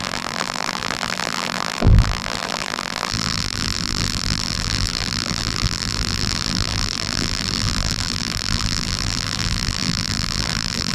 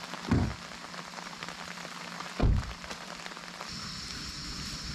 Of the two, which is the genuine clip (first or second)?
second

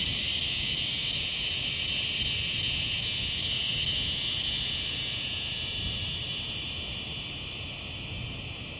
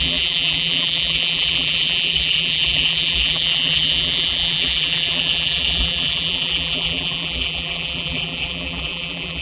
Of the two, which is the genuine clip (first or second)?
first